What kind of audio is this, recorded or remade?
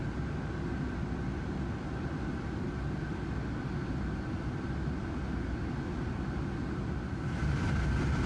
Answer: recorded